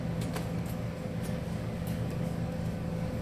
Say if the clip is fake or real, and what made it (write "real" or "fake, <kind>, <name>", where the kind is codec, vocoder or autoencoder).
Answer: fake, codec, DAC